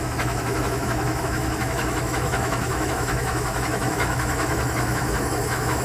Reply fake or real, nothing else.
fake